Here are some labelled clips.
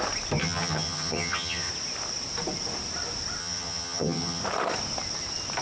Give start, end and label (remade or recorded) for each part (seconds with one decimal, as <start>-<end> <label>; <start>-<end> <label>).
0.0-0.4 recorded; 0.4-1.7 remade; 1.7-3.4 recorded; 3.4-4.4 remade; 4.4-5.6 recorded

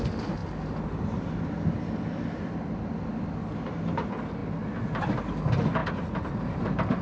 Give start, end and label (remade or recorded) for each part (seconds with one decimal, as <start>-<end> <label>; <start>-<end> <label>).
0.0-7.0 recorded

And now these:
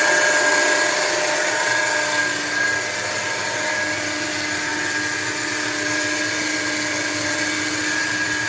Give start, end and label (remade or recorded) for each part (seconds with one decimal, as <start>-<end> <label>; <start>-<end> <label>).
0.0-8.5 recorded

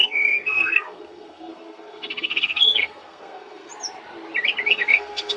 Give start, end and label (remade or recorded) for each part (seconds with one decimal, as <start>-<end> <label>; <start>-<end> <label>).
0.0-3.7 remade; 3.7-4.7 recorded; 4.7-5.4 remade

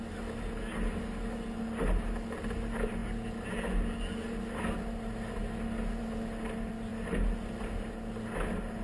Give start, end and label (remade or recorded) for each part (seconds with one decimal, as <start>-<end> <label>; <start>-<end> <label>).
0.0-8.8 recorded

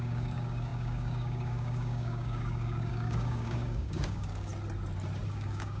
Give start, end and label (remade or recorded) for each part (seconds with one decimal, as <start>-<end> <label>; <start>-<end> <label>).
0.0-4.5 remade; 4.5-5.3 recorded; 5.3-5.8 remade